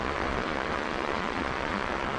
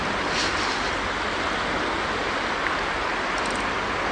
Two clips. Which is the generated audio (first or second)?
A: first